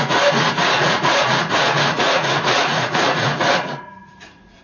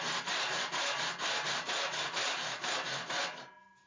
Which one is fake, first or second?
first